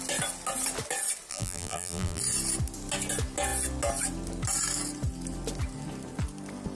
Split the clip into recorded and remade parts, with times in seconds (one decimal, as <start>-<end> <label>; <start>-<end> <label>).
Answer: 0.0-1.3 recorded; 1.3-2.2 remade; 2.2-6.8 recorded